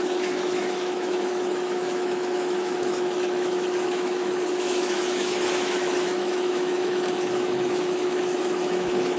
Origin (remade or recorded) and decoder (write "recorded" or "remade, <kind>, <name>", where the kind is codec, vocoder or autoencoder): remade, autoencoder, DAC-VAE